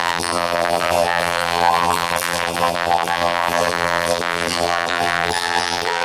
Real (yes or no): no